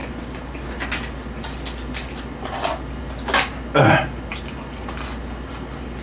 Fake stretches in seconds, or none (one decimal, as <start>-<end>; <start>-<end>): none

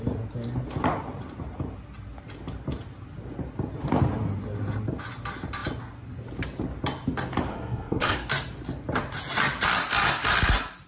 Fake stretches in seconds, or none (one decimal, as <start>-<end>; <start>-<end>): 7.5-8.3

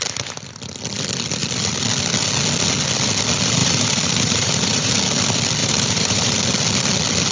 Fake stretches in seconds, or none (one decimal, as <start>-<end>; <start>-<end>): 3.6-5.0; 5.6-6.4

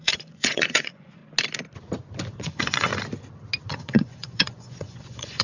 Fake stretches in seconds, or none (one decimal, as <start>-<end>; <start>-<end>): 0.0-1.2; 2.4-2.9; 3.7-5.4

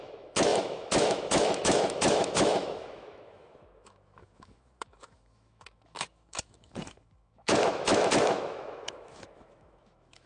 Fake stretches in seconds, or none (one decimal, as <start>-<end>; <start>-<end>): 0.0-10.3

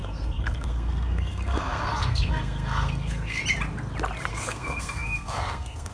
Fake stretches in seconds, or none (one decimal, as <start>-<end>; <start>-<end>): 0.0-3.4; 4.3-5.9

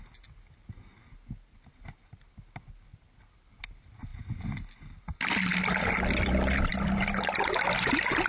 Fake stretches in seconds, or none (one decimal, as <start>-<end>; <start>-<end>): none

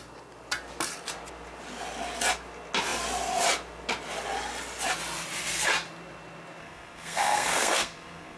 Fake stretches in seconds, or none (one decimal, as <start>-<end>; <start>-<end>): 6.6-8.4